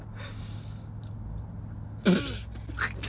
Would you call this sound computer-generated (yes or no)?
no